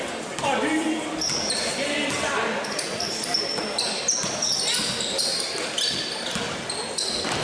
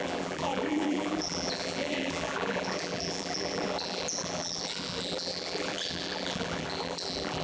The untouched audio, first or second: first